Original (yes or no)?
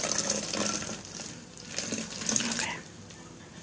yes